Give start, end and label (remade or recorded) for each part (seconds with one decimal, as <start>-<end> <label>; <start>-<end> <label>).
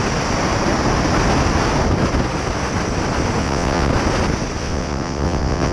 0.0-3.4 recorded; 3.4-3.9 remade; 3.9-4.6 recorded; 4.6-5.7 remade